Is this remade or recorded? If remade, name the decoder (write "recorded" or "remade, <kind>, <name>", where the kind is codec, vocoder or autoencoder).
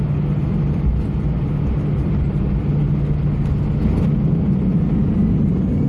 recorded